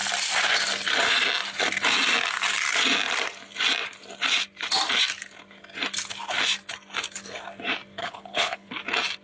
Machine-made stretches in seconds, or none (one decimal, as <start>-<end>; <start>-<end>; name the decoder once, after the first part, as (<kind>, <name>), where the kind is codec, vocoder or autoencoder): 8.0-8.7 (codec, HILCodec)